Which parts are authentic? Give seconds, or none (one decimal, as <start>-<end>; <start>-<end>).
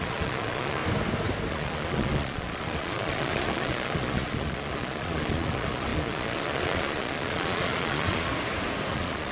0.8-1.5; 8.3-8.9